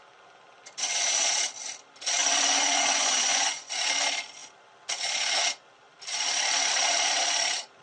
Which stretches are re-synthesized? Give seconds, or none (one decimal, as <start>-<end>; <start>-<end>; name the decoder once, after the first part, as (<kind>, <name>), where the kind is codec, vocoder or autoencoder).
2.2-3.7 (vocoder, Vocos)